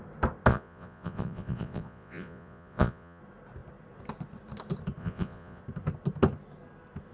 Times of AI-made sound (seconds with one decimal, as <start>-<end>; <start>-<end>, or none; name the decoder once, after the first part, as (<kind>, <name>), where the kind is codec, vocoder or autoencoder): 0.5-3.2 (vocoder, Vocos); 5.0-5.6